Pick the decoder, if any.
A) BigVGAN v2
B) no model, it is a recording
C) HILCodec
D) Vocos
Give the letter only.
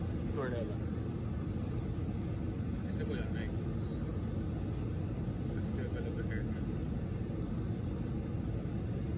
B